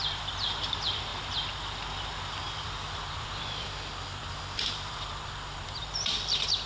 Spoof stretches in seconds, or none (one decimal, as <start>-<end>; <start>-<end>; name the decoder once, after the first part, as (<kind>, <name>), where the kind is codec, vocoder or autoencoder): 0.0-1.1 (vocoder, BigVGAN v2); 2.5-6.7